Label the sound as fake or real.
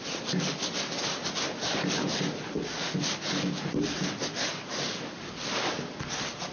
real